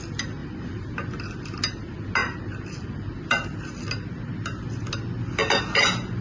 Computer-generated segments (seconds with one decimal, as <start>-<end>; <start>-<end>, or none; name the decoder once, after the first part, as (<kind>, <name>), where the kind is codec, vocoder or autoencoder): 0.4-1.1 (vocoder, BigVGAN v2)